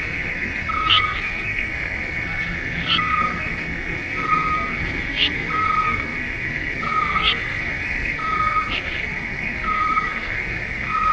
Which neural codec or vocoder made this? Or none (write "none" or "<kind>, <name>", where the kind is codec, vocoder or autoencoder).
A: codec, SNAC